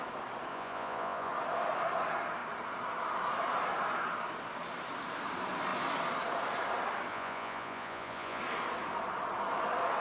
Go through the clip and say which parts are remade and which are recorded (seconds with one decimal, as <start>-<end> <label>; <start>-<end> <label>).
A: 0.0-0.5 recorded; 0.5-1.3 remade; 1.3-7.1 recorded; 7.1-8.4 remade; 8.4-10.0 recorded